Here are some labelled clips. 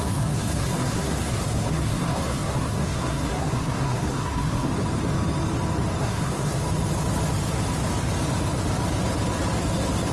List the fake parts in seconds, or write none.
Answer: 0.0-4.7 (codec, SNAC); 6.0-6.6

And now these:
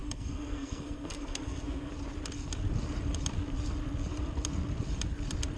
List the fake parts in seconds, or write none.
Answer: 0.0-1.9 (codec, SNAC)